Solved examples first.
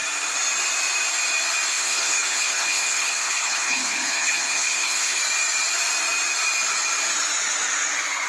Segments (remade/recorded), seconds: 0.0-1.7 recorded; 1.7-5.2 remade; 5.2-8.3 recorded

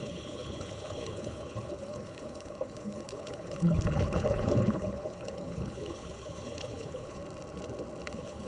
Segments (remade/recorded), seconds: 0.0-7.2 remade; 7.2-8.1 recorded; 8.1-8.5 remade